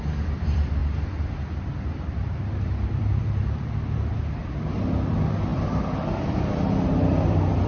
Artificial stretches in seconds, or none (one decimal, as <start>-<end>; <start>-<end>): 0.0-0.8; 1.7-7.7